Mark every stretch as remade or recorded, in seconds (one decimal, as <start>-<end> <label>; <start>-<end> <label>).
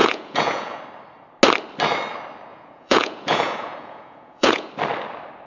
0.0-0.8 remade; 0.8-2.5 recorded; 2.5-4.7 remade; 4.7-5.5 recorded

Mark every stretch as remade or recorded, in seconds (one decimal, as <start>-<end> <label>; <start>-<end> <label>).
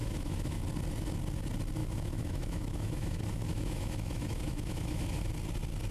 0.0-0.6 remade; 0.6-1.8 recorded; 1.8-5.3 remade; 5.3-5.9 recorded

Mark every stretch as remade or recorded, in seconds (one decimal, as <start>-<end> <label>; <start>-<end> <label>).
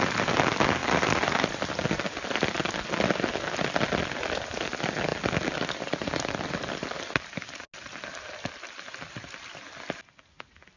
0.0-10.8 recorded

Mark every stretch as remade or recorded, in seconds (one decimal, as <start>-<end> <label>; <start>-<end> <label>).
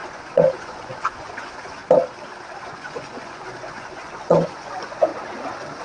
0.0-1.8 remade; 1.8-2.6 recorded; 2.6-5.1 remade; 5.1-5.8 recorded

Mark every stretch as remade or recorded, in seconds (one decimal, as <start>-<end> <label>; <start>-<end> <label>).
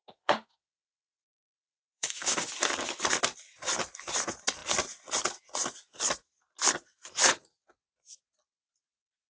0.0-1.2 remade; 1.2-1.6 recorded; 1.6-2.5 remade; 2.5-9.3 recorded